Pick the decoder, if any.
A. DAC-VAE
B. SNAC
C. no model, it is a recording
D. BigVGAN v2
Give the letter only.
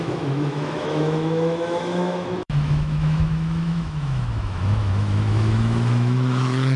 A